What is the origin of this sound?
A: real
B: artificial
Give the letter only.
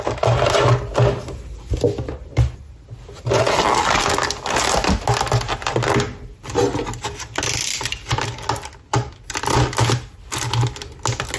A